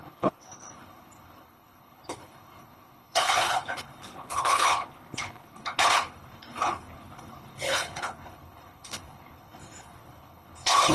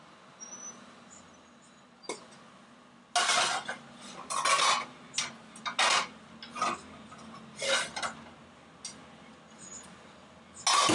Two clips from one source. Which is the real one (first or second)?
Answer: second